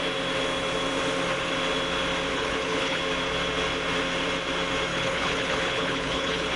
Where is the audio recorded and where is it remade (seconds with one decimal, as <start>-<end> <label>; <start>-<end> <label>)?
0.0-2.3 recorded; 2.3-3.0 remade; 3.0-4.9 recorded; 4.9-6.6 remade